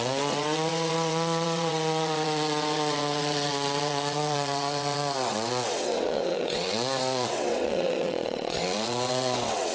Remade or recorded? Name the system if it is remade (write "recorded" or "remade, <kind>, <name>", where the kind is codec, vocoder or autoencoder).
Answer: remade, vocoder, WaveNeXt